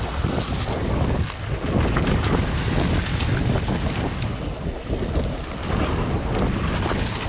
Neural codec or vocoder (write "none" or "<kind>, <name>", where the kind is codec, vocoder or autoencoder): none